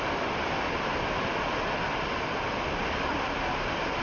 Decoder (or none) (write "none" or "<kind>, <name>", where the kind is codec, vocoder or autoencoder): none